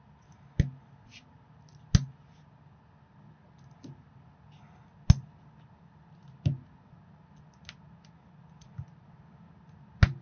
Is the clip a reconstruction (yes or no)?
no